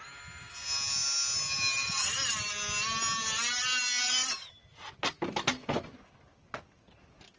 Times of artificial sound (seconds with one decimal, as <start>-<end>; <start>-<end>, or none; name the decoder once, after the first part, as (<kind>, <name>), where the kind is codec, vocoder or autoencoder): none